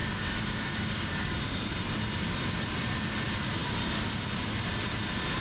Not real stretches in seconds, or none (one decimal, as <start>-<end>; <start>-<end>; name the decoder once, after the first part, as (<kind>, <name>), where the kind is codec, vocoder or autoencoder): 0.0-1.7 (codec, DAC)